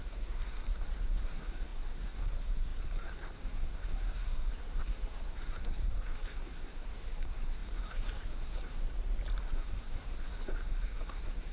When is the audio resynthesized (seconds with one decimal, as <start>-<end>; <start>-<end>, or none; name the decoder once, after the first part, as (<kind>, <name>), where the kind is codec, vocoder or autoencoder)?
0.0-8.8 (codec, SNAC); 9.4-11.5

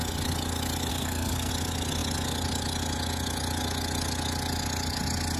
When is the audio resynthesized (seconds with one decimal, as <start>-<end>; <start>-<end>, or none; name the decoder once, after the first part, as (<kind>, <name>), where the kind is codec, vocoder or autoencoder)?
0.9-1.5 (codec, SNAC)

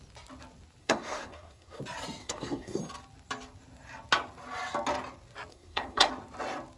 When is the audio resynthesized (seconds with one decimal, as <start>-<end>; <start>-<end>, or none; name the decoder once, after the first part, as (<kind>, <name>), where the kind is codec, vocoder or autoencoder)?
0.8-1.8 (codec, SNAC); 2.2-2.8; 5.5-6.1

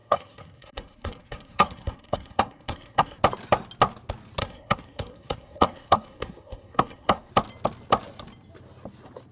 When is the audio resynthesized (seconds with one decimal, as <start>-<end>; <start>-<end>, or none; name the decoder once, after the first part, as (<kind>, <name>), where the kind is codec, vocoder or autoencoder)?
0.0-3.2 (codec, SNAC); 4.4-7.3

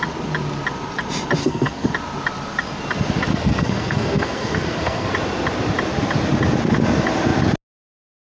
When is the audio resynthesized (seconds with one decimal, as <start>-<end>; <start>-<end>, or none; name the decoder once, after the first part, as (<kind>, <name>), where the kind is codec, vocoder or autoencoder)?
1.4-1.9 (codec, SNAC); 3.3-5.1

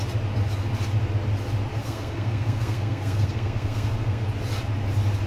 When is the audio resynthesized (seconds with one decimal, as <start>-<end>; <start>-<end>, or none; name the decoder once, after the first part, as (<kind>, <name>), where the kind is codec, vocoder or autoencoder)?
1.8-4.3 (codec, SNAC)